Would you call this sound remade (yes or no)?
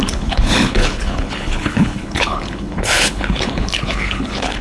yes